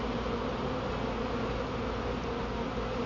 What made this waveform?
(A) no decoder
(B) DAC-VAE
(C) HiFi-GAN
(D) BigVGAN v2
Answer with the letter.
A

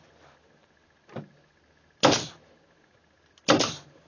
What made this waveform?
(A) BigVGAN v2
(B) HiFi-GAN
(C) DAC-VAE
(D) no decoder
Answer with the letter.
D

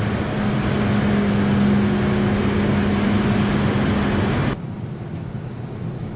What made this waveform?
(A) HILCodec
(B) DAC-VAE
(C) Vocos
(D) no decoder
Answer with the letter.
D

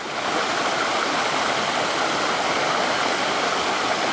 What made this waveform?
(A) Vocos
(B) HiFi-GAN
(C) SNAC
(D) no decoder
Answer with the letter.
D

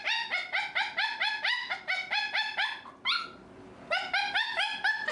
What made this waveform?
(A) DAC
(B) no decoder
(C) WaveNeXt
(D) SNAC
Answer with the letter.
B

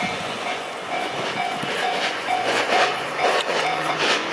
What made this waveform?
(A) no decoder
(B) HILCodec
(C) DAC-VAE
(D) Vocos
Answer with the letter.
D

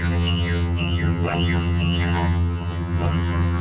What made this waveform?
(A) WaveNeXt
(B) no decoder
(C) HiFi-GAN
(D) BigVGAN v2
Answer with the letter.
C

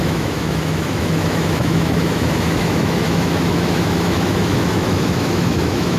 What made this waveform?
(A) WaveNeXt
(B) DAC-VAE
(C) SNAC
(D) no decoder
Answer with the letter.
B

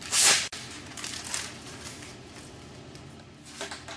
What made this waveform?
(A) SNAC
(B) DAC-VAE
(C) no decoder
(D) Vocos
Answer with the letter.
C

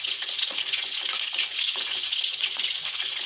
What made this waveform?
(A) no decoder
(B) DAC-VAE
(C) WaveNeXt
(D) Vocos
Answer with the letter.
D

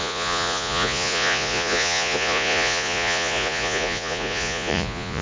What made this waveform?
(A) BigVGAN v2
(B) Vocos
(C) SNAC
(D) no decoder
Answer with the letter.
B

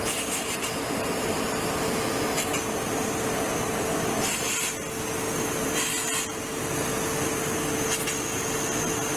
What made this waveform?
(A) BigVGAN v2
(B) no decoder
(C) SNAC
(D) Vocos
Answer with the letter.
B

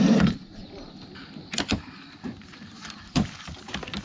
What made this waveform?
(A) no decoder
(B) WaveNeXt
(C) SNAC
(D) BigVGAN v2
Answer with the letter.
A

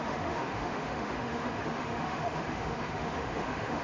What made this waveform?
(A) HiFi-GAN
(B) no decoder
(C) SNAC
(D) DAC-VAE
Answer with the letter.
D